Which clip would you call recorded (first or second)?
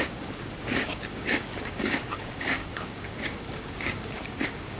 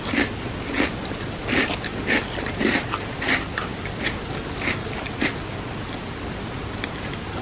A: second